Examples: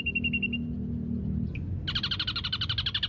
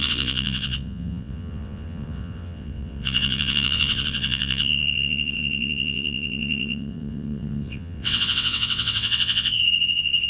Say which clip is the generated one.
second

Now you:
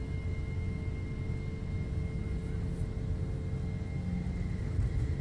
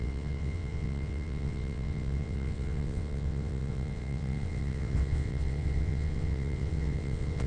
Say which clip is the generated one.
second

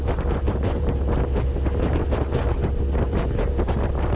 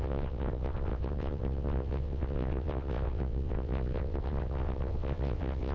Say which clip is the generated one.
second